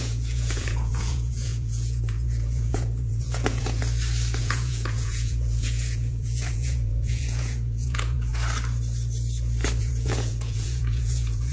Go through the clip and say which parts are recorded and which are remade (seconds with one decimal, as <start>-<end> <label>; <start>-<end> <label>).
0.0-3.8 remade; 3.8-4.4 recorded; 4.4-8.3 remade; 8.3-9.8 recorded; 9.8-11.5 remade